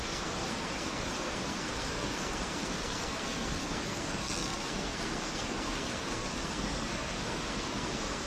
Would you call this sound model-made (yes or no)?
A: yes